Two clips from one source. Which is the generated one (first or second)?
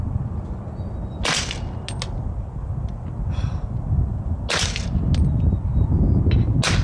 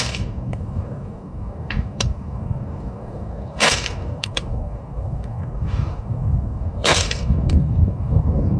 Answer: second